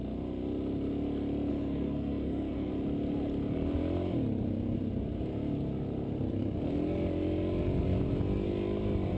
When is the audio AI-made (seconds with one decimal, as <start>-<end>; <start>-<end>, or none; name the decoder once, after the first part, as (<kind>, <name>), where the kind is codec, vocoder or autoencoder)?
1.5-2.7 (codec, SNAC)